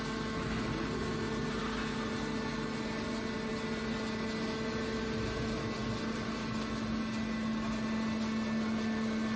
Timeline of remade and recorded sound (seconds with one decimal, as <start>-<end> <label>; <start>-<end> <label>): 0.0-9.4 recorded